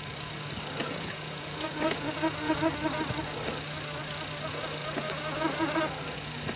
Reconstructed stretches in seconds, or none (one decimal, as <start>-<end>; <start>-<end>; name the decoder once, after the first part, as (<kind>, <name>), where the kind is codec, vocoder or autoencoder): 0.8-2.6 (vocoder, Vocos); 4.8-5.8